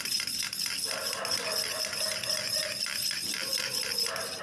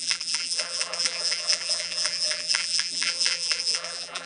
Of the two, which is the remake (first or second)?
second